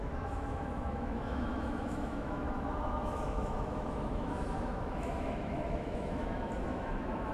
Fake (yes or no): yes